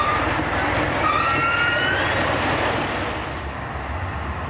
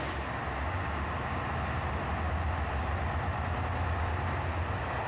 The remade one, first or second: first